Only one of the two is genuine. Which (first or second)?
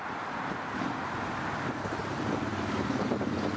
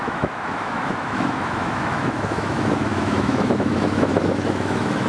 first